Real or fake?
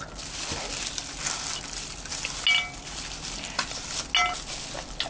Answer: real